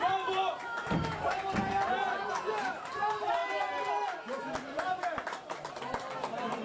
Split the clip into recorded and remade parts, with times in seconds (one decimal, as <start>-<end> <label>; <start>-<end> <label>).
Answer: 0.0-1.7 remade; 1.7-2.6 recorded; 2.6-3.4 remade; 3.4-4.4 recorded; 4.4-6.6 remade